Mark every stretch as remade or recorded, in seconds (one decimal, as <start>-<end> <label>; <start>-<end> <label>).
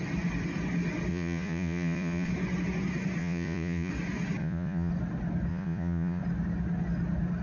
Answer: 0.0-1.1 recorded; 1.1-2.3 remade; 2.3-3.2 recorded; 3.2-3.9 remade; 3.9-4.4 recorded; 4.4-4.9 remade; 4.9-5.5 recorded; 5.5-6.2 remade; 6.2-7.4 recorded